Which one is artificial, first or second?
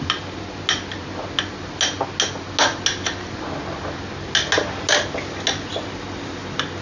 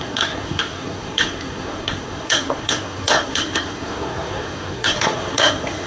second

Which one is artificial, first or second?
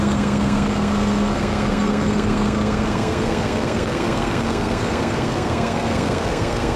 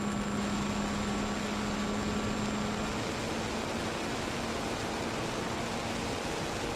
first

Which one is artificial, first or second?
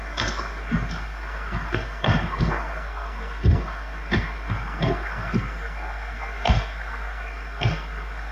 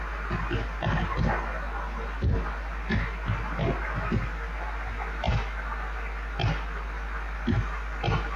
first